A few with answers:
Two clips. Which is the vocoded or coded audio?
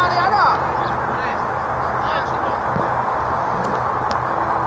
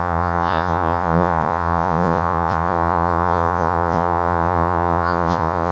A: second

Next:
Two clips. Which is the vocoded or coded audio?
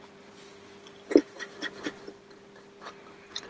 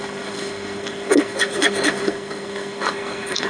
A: second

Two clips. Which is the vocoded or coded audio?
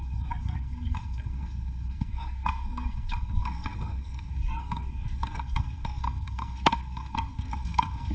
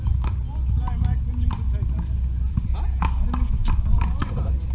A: first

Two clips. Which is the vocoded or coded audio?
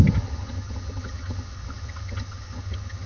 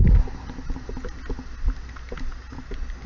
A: first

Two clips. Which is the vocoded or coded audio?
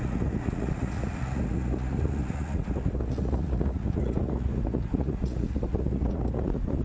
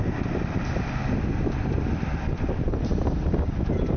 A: first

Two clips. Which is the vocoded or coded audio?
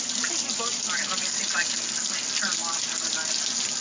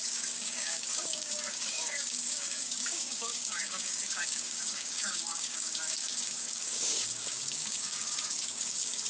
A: second